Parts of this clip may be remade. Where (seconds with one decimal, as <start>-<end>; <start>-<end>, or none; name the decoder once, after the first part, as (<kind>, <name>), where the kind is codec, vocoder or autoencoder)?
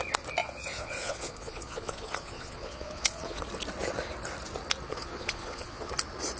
0.4-3.4 (vocoder, Vocos); 4.9-5.9